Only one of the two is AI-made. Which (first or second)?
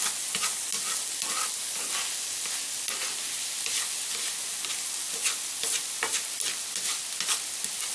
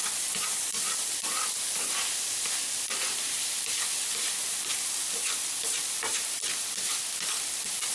second